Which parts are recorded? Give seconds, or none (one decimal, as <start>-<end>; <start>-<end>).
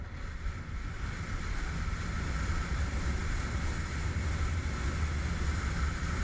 0.0-6.2